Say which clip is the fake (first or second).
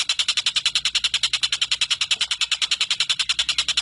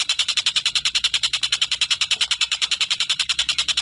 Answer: second